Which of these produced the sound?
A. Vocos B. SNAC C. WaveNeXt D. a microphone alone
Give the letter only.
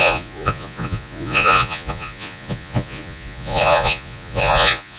A